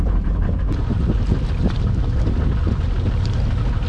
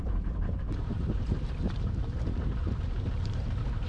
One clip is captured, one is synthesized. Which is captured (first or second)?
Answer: first